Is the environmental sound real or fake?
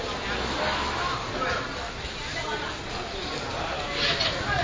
real